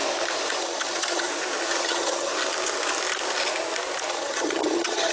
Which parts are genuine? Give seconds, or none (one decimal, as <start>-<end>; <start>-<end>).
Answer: 0.0-0.6; 1.3-1.8; 2.3-4.1